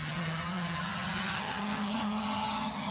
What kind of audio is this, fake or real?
fake